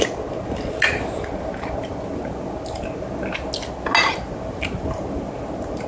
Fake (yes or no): no